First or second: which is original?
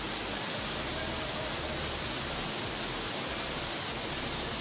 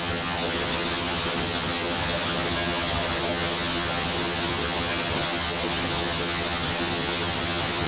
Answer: first